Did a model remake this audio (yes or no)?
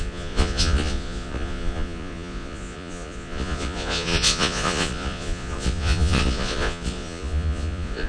yes